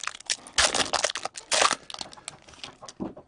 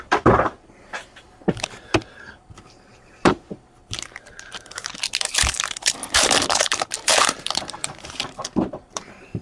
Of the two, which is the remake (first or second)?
second